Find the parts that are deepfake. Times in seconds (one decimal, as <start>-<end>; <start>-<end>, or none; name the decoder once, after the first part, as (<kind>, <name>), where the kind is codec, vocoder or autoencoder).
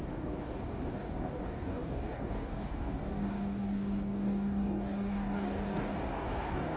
0.0-6.8 (codec, DAC)